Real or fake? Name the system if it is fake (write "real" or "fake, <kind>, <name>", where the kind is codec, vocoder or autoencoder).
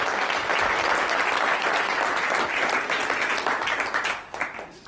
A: real